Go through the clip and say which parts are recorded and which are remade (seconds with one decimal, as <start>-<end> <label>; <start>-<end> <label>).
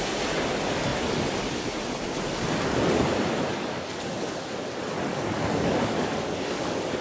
0.0-3.5 recorded; 3.5-4.0 remade; 4.0-5.1 recorded; 5.1-7.0 remade